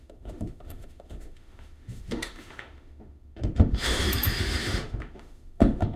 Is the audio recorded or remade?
remade